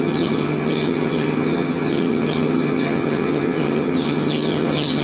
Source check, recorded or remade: remade